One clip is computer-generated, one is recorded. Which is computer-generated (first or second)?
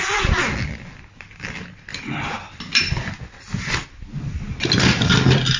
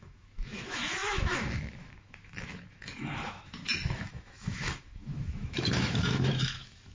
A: second